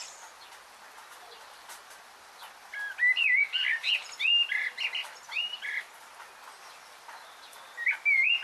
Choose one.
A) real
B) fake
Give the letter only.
A